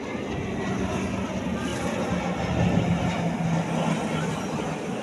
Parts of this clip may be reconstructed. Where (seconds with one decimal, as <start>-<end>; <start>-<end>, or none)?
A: none